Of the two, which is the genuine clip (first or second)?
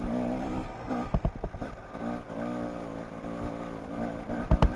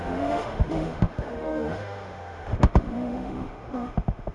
first